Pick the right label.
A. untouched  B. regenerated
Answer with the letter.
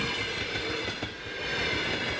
A